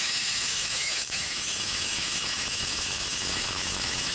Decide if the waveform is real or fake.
fake